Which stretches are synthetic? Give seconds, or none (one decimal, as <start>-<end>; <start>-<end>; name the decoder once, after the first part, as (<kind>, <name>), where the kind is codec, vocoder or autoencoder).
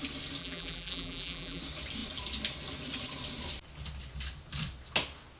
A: 0.4-1.6 (vocoder, BigVGAN v2)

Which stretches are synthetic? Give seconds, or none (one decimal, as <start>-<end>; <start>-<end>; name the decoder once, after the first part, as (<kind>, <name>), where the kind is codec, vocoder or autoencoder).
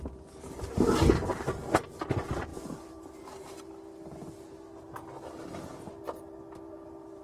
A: none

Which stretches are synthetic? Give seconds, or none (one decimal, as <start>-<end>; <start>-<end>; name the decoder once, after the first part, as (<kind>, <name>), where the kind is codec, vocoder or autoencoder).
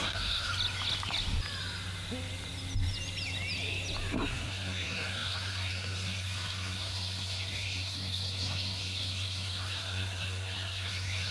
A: 0.0-0.5 (codec, SNAC); 4.3-11.3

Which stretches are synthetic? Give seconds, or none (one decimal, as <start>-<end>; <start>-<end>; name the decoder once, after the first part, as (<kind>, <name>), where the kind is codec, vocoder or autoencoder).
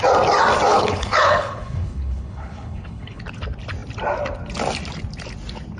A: 0.7-3.2 (codec, HILCodec)